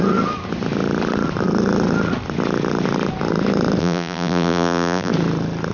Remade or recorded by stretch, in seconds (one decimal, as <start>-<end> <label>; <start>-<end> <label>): 0.0-3.8 recorded; 3.8-5.1 remade; 5.1-5.7 recorded